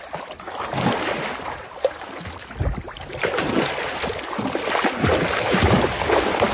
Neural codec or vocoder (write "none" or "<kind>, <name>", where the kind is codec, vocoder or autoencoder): none